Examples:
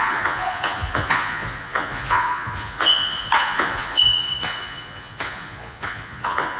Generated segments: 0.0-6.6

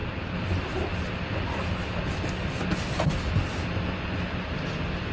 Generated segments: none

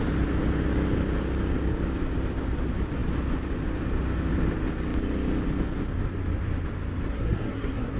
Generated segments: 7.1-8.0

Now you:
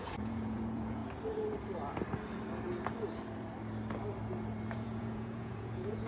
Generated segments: 0.0-1.0; 4.7-6.1